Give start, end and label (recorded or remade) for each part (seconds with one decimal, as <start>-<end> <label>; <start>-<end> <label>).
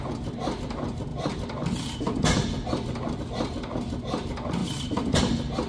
0.0-1.1 recorded; 1.1-3.2 remade; 3.2-4.6 recorded; 4.6-5.2 remade; 5.2-5.7 recorded